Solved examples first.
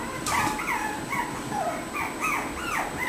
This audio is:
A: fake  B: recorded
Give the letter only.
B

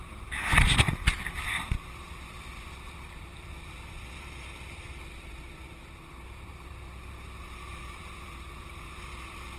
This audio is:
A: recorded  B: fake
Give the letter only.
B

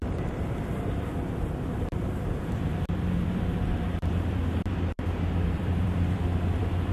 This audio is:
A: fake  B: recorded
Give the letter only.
A